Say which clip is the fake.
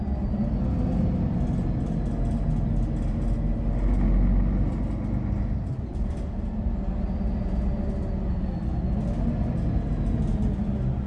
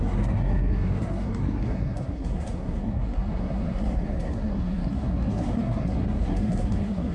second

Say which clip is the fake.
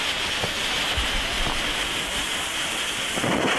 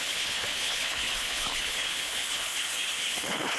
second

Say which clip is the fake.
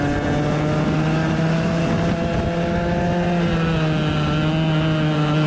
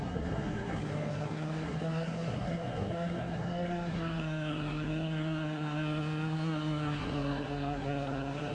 second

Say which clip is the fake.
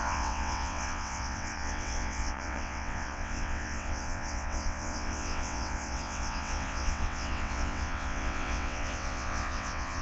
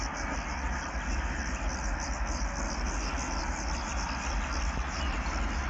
first